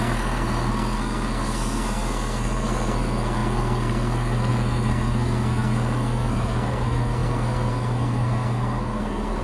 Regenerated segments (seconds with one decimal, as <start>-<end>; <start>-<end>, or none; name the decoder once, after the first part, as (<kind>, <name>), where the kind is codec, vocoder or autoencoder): 0.0-9.4 (codec, SNAC)